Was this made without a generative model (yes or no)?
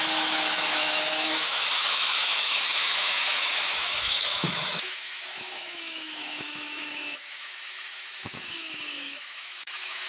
no